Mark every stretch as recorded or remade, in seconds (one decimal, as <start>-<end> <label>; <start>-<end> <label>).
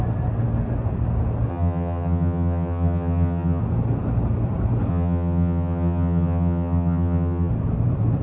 0.0-1.5 recorded; 1.5-3.6 remade; 3.6-4.9 recorded; 4.9-7.5 remade; 7.5-8.2 recorded